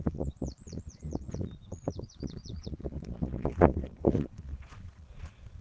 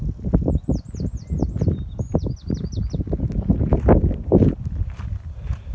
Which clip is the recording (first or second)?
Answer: second